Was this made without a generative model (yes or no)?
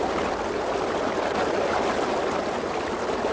yes